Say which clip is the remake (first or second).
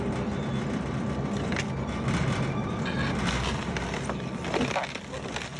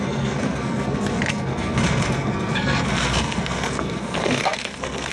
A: second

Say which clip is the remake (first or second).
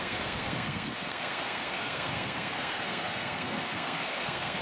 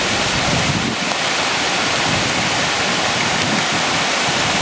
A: first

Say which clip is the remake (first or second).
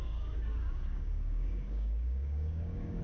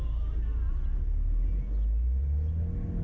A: first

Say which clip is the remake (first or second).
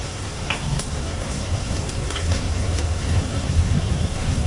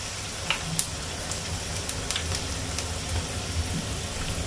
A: first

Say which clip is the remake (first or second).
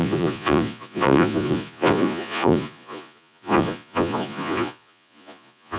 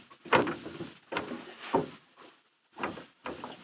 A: first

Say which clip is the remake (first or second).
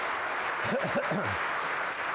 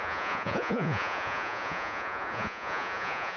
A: second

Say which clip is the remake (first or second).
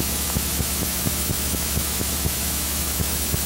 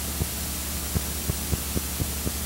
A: first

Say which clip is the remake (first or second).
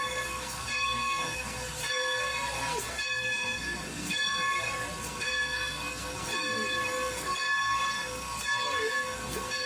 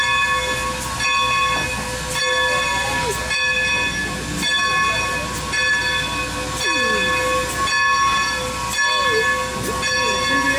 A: first